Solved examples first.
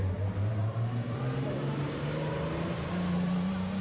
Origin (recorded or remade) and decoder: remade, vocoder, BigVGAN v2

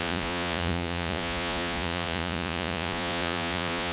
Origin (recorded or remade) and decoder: remade, vocoder, Vocos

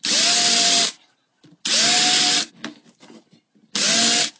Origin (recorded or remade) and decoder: recorded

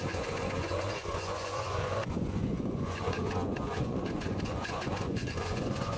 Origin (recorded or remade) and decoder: remade, vocoder, Vocos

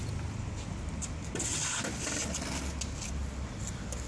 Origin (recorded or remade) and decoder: recorded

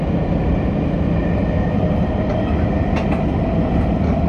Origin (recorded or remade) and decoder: recorded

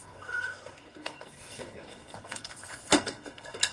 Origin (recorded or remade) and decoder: remade, codec, SNAC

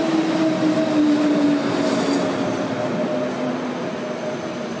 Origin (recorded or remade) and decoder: recorded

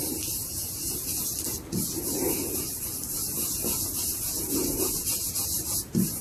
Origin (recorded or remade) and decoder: recorded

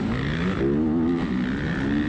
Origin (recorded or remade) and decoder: recorded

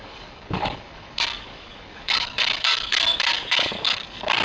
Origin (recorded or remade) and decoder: remade, codec, DAC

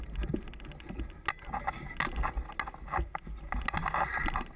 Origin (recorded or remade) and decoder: recorded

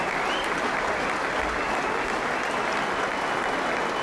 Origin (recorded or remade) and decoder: recorded